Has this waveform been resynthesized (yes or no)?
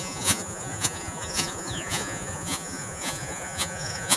yes